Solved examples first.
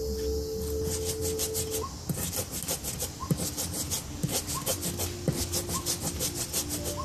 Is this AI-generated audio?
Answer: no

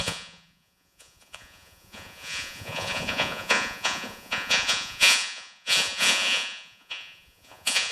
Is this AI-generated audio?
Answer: yes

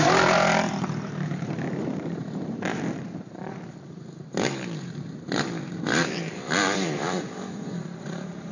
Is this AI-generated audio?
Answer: yes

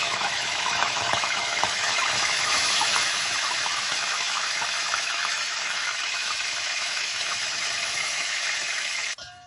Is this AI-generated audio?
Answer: yes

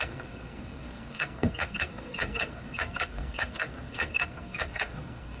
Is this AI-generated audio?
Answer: yes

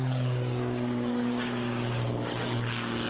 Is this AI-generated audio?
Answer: yes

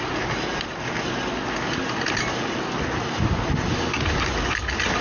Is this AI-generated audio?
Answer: no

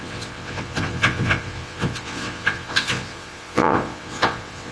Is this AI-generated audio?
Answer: yes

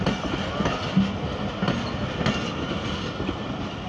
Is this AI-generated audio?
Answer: no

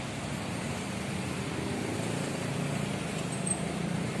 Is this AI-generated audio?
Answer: no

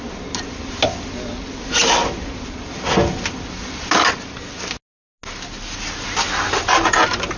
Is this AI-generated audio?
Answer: no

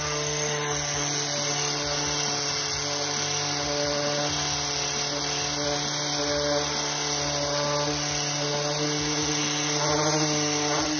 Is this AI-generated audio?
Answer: no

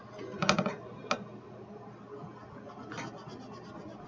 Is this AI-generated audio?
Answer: no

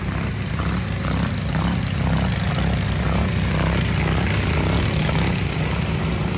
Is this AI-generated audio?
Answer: no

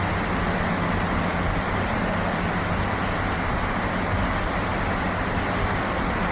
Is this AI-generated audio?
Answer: no